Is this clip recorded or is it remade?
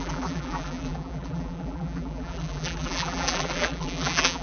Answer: remade